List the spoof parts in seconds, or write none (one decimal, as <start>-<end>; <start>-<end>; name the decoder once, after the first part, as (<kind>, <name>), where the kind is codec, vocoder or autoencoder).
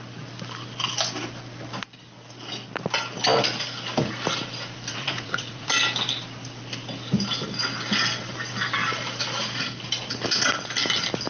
4.9-5.7 (vocoder, Vocos)